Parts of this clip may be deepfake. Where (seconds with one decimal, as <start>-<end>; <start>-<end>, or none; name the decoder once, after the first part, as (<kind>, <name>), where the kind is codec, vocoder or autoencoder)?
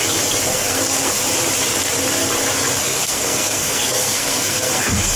0.5-1.2 (codec, SNAC); 2.8-5.2